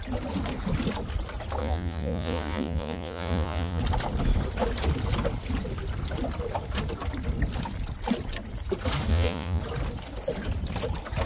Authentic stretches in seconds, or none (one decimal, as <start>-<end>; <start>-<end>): 0.0-1.6; 3.8-9.1; 9.6-11.3

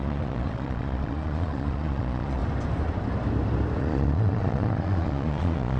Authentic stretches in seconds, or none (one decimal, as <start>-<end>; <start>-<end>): 2.4-3.8

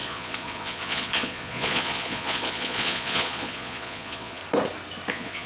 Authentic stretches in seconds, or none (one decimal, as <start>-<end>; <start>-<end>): 4.4-5.1

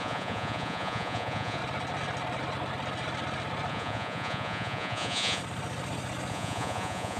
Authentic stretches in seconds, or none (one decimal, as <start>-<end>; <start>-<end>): 1.6-3.7; 5.4-6.3